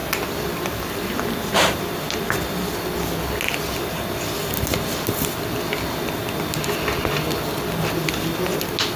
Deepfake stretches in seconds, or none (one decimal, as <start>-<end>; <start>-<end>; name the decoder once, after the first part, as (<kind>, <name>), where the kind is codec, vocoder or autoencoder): none